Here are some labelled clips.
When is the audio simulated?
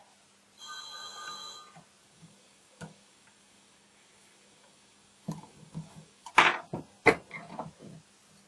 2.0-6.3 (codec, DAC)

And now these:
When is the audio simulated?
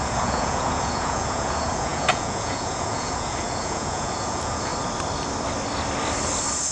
0.0-4.7 (vocoder, Vocos)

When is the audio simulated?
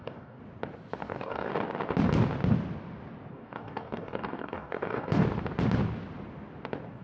0.0-0.4 (codec, DAC); 1.0-1.5; 3.3-5.2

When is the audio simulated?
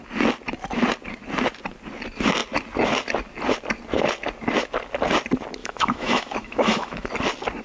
5.6-7.1 (autoencoder, DAC-VAE)